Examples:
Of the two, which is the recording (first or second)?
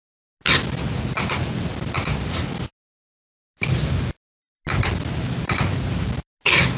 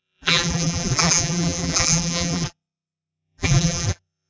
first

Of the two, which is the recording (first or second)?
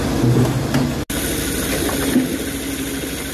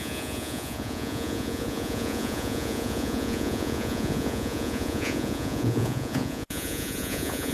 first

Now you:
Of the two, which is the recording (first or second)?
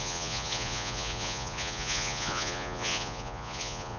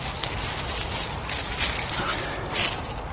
second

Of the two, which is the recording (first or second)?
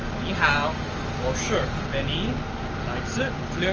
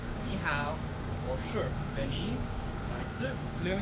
first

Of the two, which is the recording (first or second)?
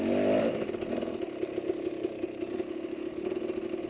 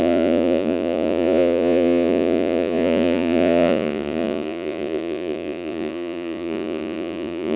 first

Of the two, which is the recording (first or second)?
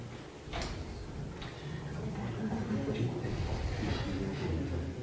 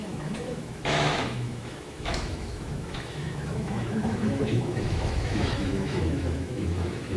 first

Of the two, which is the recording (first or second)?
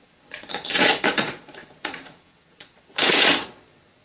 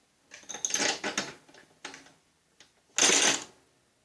second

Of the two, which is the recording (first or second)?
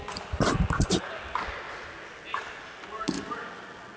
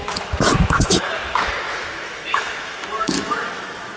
first